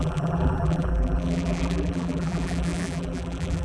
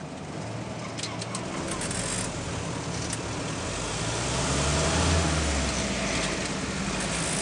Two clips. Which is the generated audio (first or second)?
first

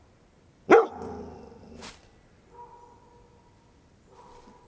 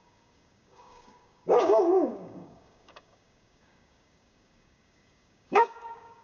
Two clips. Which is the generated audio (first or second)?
second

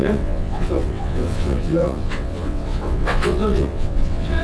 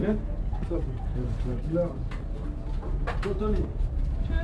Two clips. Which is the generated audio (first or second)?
first